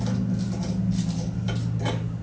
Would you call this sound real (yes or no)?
yes